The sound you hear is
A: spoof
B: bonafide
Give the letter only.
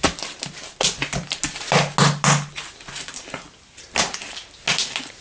B